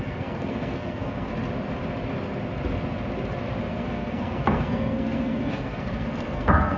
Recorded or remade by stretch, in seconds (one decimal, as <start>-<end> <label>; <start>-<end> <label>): 0.0-1.3 remade; 1.3-3.6 recorded; 3.6-6.8 remade